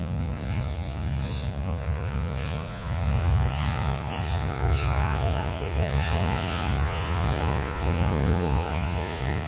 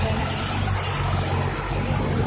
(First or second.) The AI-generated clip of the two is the first